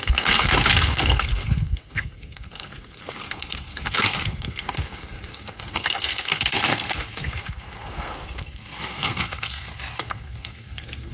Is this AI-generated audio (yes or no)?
yes